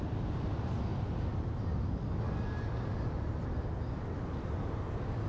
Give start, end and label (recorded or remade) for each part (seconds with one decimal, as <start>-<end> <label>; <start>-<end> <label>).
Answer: 0.0-5.3 recorded